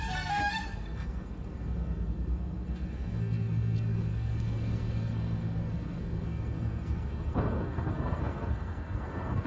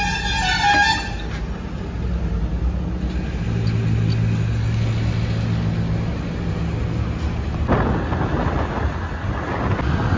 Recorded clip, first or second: second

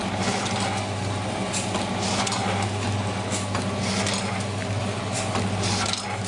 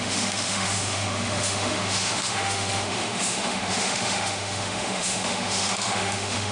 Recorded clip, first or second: first